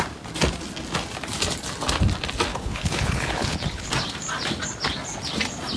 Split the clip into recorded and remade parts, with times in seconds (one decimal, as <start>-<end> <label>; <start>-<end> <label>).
0.0-2.5 recorded; 2.5-3.9 remade; 3.9-5.8 recorded